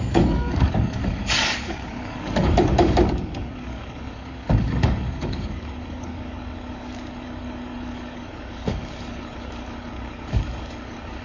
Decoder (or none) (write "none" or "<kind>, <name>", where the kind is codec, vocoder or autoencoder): codec, DAC